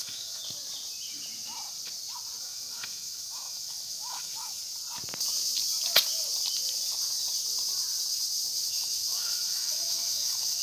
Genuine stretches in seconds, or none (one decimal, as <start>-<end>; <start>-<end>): 0.4-2.4; 4.6-8.7